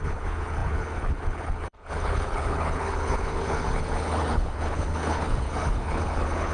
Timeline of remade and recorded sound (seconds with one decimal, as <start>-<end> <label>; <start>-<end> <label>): 0.0-6.5 remade